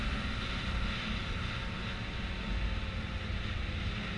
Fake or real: real